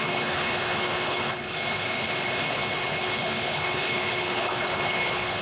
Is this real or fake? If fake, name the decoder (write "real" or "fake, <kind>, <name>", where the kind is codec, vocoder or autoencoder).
fake, codec, HILCodec